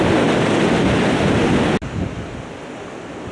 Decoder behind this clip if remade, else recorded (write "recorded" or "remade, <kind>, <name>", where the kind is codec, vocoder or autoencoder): recorded